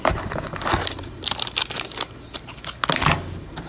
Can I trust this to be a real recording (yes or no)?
yes